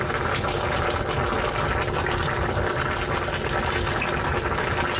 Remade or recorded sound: recorded